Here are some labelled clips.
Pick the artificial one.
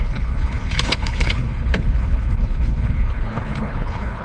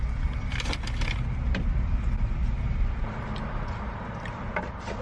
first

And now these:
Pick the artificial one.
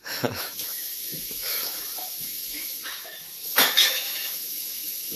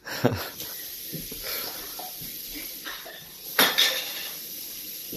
first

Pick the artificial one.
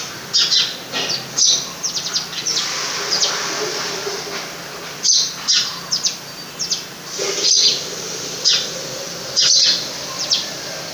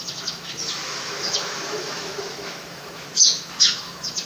second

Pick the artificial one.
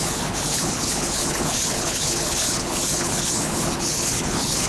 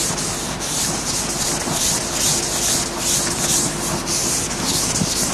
first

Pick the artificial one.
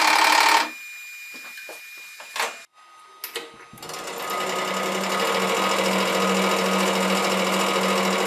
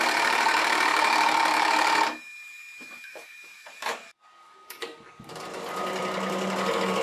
second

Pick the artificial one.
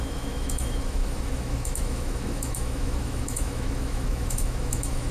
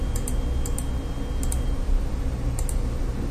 first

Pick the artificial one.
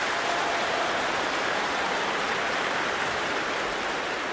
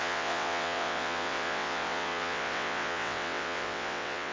second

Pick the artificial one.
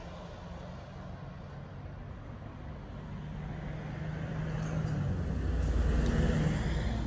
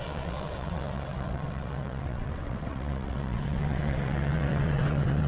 second